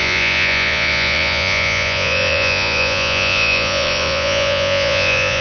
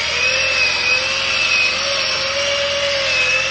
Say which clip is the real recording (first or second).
second